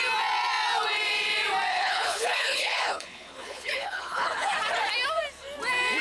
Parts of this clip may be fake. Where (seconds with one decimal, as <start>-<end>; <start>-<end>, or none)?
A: 1.7-4.5